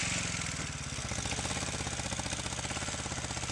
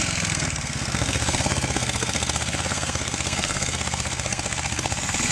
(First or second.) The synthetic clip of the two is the second